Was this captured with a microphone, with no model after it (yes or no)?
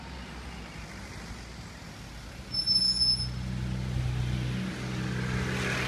yes